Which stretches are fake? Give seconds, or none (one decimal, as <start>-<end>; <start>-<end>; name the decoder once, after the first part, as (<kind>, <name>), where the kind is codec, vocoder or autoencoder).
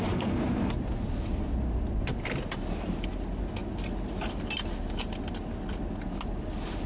none